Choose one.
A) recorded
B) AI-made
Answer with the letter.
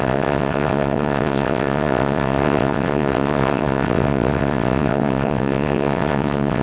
B